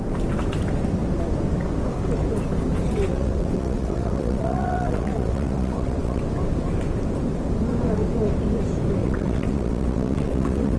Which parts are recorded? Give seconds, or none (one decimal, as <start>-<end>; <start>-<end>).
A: 0.0-3.1; 6.2-9.0